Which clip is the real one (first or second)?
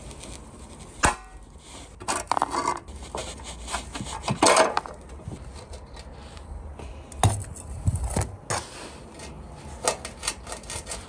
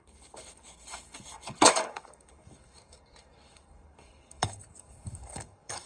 first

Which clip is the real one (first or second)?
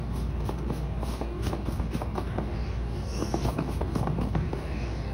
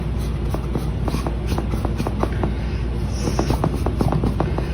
second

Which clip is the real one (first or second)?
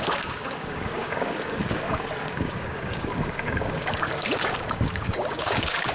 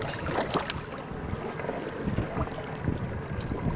second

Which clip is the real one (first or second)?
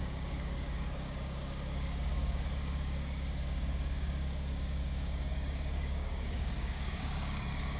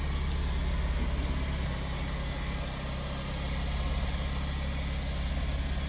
second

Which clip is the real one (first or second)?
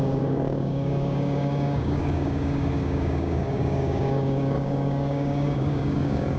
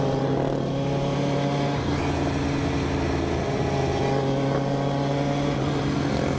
second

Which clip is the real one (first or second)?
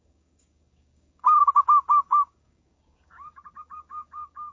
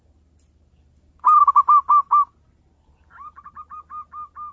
second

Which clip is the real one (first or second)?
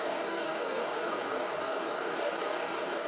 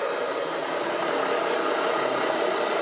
second